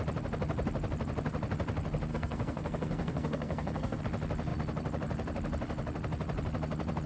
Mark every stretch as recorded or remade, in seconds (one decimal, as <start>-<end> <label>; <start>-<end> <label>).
0.0-2.1 recorded; 2.1-4.0 remade; 4.0-7.1 recorded